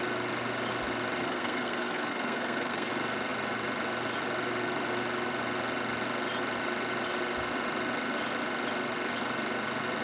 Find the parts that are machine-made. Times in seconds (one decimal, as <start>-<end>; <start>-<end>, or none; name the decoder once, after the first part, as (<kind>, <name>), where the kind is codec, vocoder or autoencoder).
1.2-2.9 (codec, SNAC)